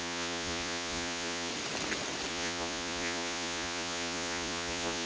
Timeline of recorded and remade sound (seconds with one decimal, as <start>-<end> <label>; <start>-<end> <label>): 0.0-1.5 remade; 1.5-2.3 recorded; 2.3-5.1 remade